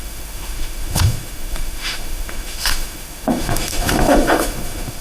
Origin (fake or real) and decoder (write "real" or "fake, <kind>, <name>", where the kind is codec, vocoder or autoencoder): fake, autoencoder, DAC-VAE